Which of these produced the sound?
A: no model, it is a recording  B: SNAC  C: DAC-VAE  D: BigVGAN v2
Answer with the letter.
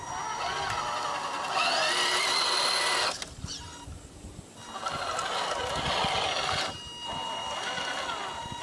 A